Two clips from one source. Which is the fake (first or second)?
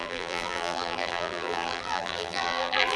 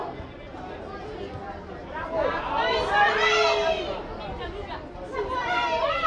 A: first